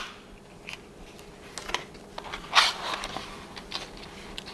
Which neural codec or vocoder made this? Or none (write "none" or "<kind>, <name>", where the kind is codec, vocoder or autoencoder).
none